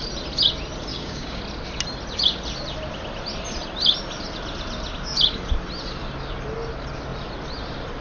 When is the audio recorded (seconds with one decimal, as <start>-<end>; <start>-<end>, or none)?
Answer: 0.0-0.9; 1.4-8.0